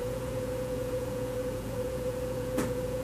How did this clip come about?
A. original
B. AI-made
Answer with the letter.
B